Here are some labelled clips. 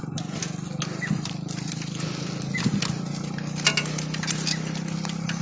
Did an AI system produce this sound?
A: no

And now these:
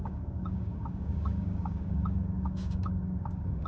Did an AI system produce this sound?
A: yes